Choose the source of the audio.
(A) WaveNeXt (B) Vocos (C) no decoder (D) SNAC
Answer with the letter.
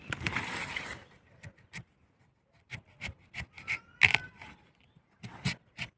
C